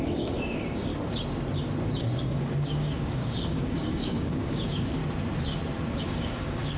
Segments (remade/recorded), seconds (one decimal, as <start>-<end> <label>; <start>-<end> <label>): 0.0-0.9 remade; 0.9-2.0 recorded; 2.0-5.0 remade; 5.0-6.0 recorded; 6.0-6.8 remade